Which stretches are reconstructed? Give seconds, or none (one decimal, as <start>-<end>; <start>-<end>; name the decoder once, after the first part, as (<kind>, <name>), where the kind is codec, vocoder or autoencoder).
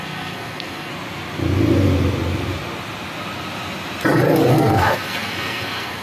0.0-0.9 (codec, SNAC); 4.5-6.0